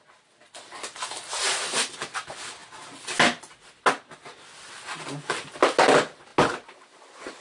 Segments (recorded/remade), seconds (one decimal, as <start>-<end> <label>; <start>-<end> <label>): 0.0-7.4 recorded